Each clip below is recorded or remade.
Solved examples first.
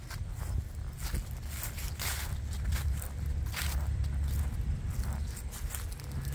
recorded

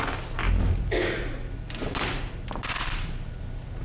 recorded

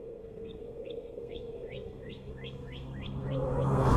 remade